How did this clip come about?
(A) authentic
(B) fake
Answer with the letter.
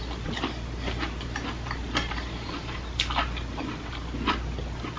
B